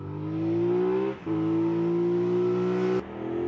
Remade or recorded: recorded